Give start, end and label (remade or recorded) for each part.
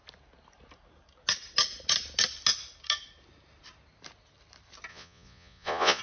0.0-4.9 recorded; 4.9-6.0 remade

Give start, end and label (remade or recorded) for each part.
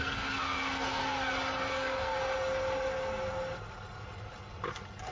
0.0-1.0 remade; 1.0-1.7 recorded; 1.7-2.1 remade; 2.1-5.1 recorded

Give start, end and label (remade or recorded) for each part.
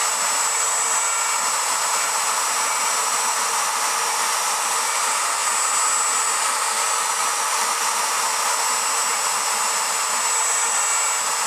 0.0-11.5 recorded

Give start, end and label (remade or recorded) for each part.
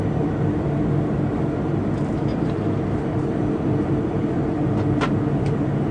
0.0-5.9 recorded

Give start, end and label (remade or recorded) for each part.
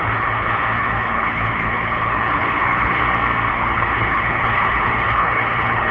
0.0-3.0 remade; 3.0-3.5 recorded; 3.5-5.9 remade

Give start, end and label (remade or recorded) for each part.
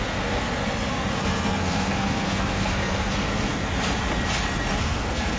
0.0-0.6 remade; 0.6-1.2 recorded; 1.2-3.6 remade; 3.6-4.8 recorded; 4.8-5.4 remade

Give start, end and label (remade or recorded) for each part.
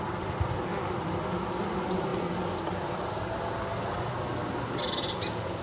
0.0-5.6 recorded